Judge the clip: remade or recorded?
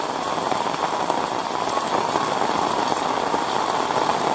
recorded